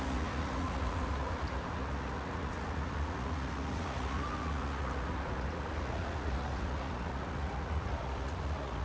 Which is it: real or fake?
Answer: fake